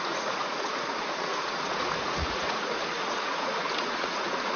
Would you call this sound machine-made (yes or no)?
yes